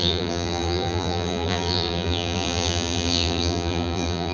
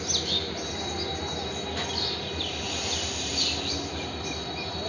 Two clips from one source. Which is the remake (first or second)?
first